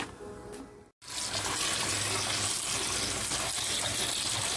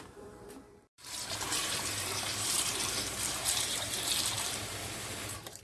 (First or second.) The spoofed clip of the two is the second